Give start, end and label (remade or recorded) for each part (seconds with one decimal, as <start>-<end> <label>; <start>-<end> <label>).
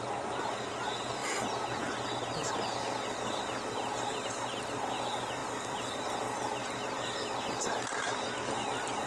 0.0-5.4 recorded; 5.4-6.0 remade; 6.0-6.6 recorded; 6.6-8.3 remade; 8.3-9.1 recorded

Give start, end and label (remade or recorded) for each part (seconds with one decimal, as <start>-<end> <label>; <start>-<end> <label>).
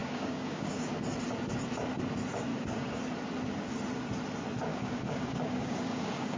0.0-0.9 remade; 0.9-2.5 recorded; 2.5-3.0 remade; 3.0-4.7 recorded; 4.7-6.4 remade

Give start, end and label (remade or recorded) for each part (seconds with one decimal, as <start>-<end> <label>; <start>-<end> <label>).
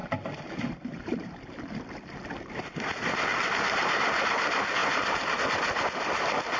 0.0-1.3 remade; 1.3-3.3 recorded; 3.3-3.9 remade; 3.9-4.8 recorded; 4.8-5.4 remade; 5.4-6.6 recorded